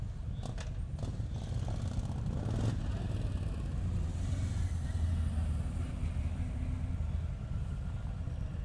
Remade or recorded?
recorded